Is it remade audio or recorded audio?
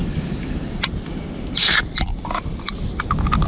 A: recorded